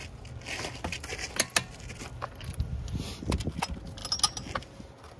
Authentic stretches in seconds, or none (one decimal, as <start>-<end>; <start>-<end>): 0.0-5.2